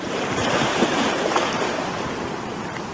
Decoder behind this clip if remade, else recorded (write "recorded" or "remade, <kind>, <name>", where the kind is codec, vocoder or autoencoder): remade, vocoder, BigVGAN v2